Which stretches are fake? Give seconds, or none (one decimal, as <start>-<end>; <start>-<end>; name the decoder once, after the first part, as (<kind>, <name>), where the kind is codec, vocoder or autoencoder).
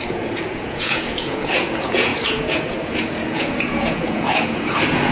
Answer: 0.0-5.1 (vocoder, Vocos)